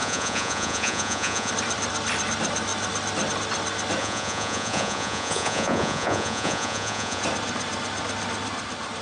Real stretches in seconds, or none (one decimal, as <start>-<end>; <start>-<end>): 1.5-4.0; 7.2-9.0